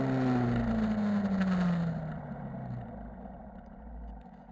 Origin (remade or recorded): recorded